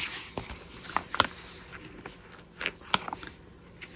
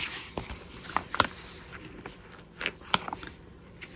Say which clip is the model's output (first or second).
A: second